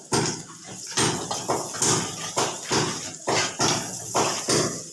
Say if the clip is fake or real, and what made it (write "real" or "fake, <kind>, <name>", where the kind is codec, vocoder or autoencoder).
real